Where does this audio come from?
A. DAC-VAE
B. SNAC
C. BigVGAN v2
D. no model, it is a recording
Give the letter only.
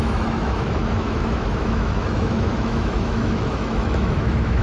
A